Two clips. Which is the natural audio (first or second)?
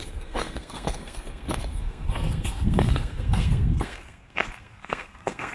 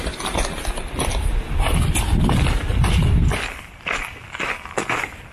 second